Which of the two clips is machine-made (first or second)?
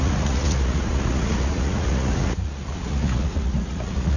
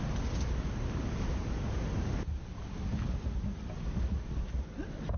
first